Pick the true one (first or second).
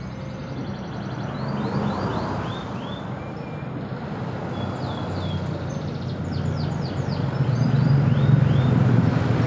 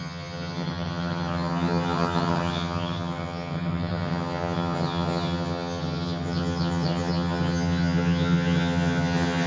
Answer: first